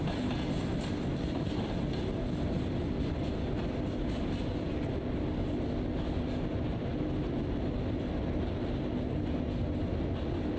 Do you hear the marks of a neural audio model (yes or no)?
no